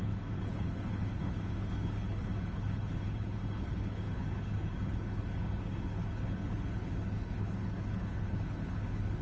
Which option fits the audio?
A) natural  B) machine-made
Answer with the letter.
B